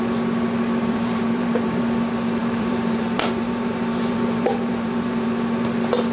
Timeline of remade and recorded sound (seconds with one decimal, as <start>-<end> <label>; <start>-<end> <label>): 0.0-0.8 recorded; 0.8-1.8 remade; 1.8-2.4 recorded; 2.4-5.3 remade; 5.3-6.1 recorded